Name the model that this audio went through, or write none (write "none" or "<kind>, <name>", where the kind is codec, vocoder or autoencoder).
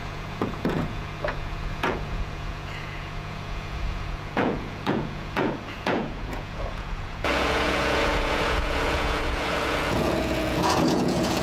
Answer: vocoder, Vocos